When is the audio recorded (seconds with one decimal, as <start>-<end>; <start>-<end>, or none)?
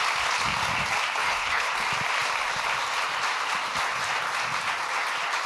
0.0-1.2; 1.7-5.5